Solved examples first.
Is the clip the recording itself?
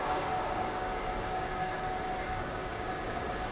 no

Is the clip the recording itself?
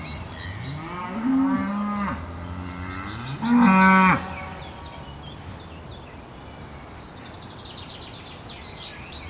yes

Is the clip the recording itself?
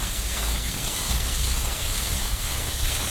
no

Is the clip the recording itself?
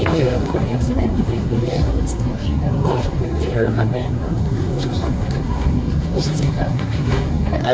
no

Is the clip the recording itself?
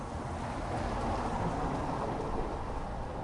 yes